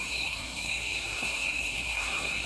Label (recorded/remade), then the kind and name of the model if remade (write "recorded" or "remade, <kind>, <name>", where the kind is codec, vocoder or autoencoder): remade, codec, SNAC